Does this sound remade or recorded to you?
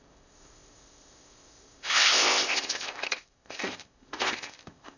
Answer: remade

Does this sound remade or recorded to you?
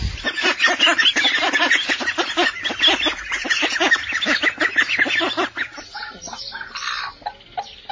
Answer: recorded